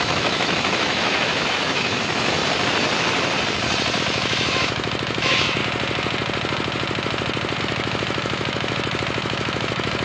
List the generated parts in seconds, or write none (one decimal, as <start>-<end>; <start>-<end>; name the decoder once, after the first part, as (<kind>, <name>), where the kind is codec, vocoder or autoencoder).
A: 0.0-2.4 (autoencoder, DAC-VAE); 4.0-5.6; 7.6-10.0